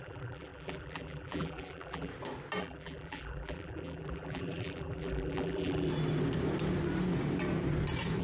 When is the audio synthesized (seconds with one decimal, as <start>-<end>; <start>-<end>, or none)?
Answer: 0.0-2.1; 2.6-5.9